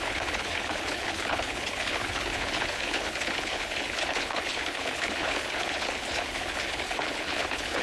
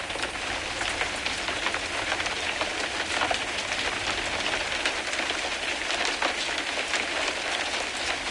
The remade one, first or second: first